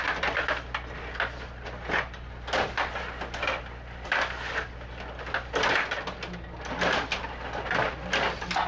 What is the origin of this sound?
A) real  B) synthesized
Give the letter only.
A